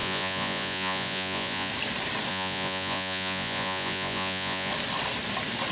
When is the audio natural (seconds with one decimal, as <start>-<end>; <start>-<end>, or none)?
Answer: 1.7-2.3; 4.7-5.7